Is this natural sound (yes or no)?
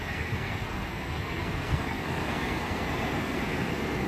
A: no